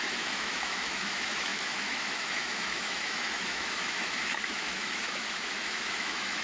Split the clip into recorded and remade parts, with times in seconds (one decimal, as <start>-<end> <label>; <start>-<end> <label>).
0.0-6.4 remade